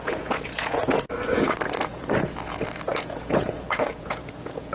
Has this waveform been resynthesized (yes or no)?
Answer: yes